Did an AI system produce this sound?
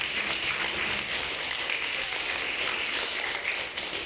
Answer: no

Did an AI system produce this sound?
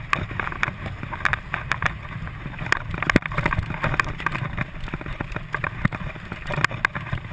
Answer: no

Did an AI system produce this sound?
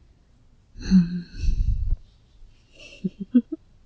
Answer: no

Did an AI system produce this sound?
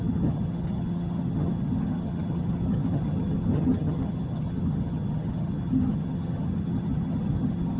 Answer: yes